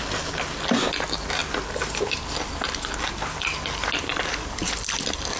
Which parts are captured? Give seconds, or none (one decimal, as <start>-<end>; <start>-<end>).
0.0-4.1